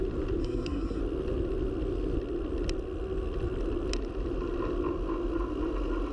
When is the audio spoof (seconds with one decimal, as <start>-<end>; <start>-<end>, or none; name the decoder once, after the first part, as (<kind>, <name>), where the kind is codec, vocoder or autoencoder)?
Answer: 0.4-1.0 (codec, SNAC)